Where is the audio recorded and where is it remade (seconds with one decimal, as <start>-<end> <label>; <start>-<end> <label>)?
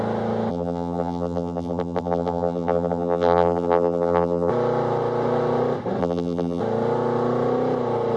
0.0-0.5 recorded; 0.5-4.5 remade; 4.5-6.0 recorded; 6.0-6.6 remade; 6.6-8.2 recorded